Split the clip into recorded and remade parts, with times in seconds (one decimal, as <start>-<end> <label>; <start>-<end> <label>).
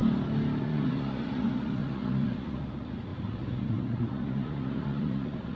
0.0-0.6 recorded; 0.6-5.6 remade